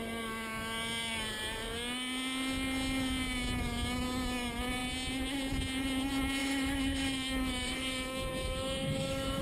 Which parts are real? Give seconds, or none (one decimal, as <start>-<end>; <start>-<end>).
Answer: 0.0-6.4